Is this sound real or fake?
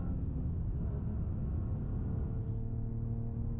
real